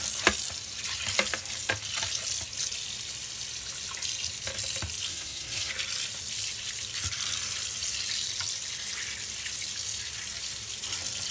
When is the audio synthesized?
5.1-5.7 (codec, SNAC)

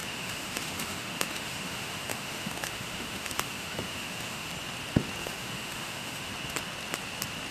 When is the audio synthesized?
0.0-4.5 (autoencoder, DAC-VAE); 5.2-6.3

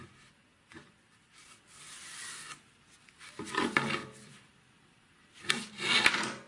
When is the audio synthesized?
none